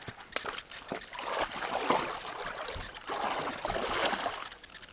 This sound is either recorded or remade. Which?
recorded